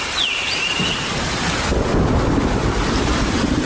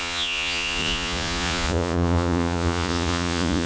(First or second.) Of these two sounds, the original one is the first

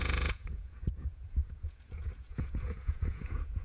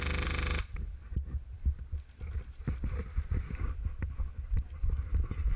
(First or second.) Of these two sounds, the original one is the second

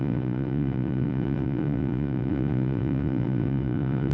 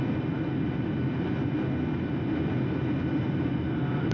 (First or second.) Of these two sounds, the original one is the second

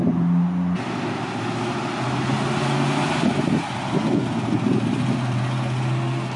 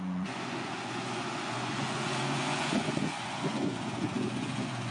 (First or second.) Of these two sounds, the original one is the first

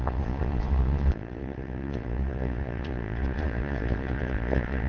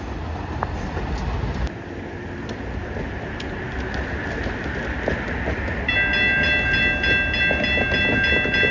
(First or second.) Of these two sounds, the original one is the second